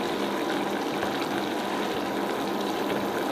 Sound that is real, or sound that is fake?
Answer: real